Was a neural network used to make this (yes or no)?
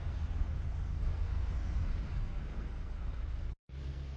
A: yes